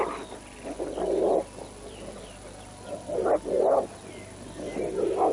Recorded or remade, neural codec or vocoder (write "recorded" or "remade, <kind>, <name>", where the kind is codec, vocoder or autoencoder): recorded